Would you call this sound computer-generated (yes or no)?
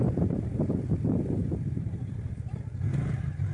yes